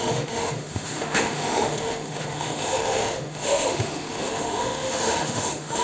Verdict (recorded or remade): remade